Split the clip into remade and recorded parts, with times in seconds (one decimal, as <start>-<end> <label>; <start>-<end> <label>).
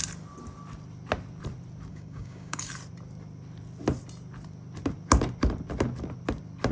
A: 0.0-1.9 recorded; 1.9-2.7 remade; 2.7-6.7 recorded